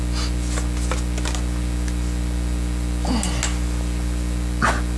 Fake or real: real